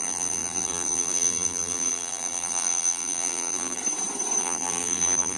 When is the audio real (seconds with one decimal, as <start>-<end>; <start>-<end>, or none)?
3.8-4.4